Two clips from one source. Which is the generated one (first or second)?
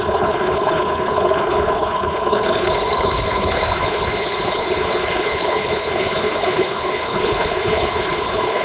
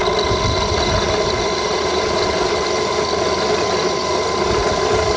first